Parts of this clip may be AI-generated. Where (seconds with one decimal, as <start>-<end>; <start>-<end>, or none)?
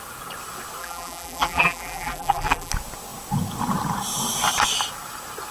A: 0.8-2.7